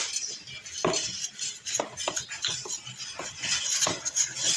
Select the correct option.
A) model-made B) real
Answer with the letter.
B